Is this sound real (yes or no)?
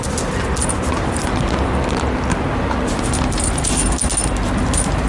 yes